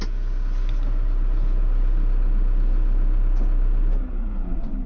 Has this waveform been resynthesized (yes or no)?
no